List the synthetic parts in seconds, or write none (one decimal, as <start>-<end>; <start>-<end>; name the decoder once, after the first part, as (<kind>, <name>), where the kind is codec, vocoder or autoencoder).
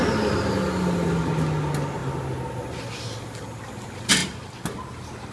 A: none